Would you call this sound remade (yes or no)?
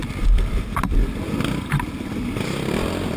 yes